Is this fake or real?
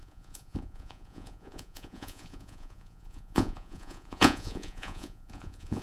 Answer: fake